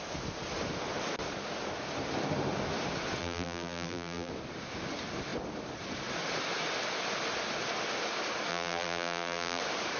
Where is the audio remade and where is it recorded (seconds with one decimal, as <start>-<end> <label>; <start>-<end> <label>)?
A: 0.0-3.2 recorded; 3.2-4.3 remade; 4.3-8.5 recorded; 8.5-9.6 remade; 9.6-10.0 recorded